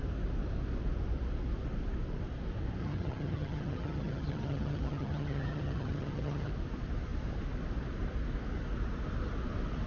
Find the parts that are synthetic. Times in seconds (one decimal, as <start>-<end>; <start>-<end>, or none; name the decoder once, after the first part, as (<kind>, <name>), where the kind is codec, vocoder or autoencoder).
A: 2.8-6.5 (vocoder, HiFi-GAN)